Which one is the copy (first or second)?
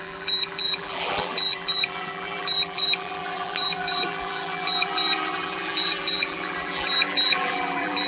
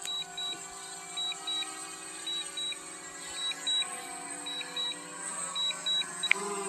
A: first